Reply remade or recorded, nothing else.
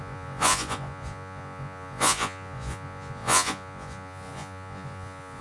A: remade